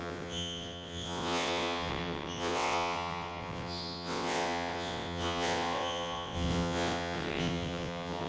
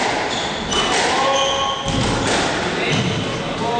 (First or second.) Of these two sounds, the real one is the second